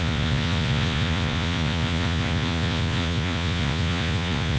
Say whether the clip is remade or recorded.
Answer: remade